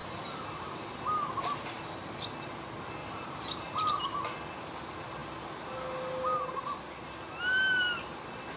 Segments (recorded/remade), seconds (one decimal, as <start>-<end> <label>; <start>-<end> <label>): 0.0-1.8 remade; 1.8-3.0 recorded; 3.0-4.0 remade; 4.0-8.6 recorded